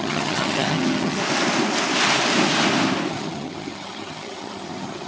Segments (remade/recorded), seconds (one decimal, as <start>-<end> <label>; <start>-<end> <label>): 0.0-1.2 remade; 1.2-3.1 recorded; 3.1-5.1 remade